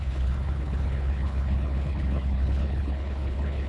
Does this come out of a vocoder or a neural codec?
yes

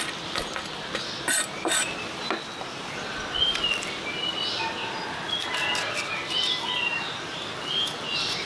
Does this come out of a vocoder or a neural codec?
no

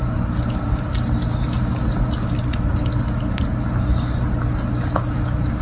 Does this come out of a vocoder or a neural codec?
no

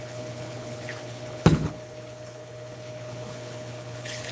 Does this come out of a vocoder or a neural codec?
yes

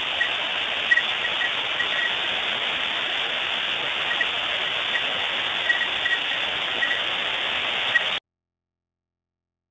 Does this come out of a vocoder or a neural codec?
no